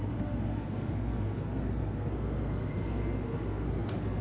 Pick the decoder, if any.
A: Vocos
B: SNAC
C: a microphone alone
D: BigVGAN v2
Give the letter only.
B